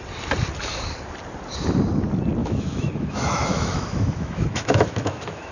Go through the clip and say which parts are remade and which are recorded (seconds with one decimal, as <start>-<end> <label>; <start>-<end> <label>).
0.0-2.4 recorded; 2.4-5.5 remade